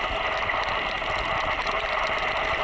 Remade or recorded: recorded